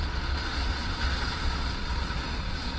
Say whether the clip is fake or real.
fake